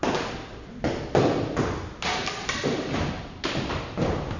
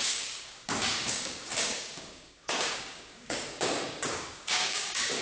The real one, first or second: first